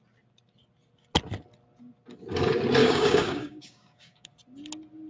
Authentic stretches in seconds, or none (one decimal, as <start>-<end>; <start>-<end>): 0.0-2.8; 4.3-5.1